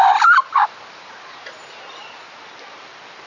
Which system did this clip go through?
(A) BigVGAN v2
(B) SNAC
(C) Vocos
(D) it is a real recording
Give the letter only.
D